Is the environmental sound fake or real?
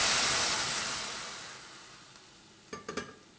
real